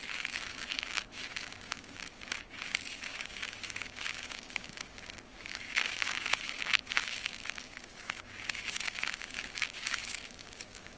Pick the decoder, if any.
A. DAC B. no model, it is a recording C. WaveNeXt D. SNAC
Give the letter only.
A